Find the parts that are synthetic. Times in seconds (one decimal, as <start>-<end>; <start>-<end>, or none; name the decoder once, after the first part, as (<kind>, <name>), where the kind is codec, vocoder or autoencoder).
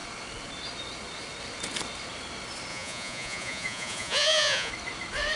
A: 2.7-4.7 (vocoder, Vocos)